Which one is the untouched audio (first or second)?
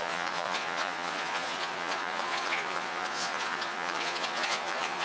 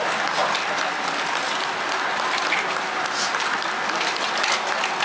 second